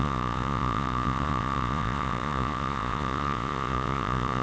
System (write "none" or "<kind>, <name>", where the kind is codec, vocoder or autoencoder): vocoder, Vocos